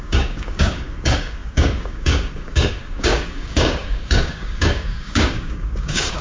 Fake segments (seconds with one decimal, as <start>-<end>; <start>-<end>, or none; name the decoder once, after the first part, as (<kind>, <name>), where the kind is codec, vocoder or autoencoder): 0.0-6.2 (codec, DAC)